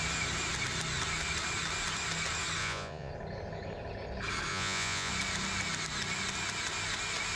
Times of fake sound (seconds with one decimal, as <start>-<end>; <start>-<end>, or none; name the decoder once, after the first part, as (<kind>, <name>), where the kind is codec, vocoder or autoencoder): 2.6-3.1 (vocoder, Vocos); 4.5-5.1